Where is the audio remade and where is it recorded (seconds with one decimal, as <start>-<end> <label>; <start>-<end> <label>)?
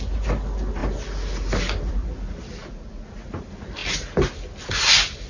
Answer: 0.0-2.6 recorded; 2.6-3.3 remade; 3.3-5.3 recorded